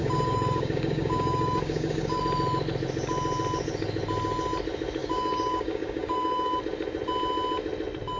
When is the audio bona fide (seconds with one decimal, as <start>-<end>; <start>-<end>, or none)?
2.2-5.0; 6.6-8.2